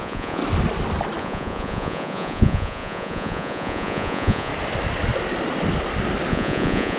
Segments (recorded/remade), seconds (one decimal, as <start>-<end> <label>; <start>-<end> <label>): 0.0-0.4 remade; 0.4-1.2 recorded; 1.2-4.5 remade; 4.5-6.3 recorded; 6.3-7.0 remade